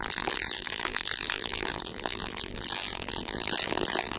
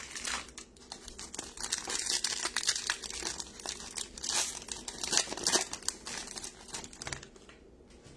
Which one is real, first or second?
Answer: second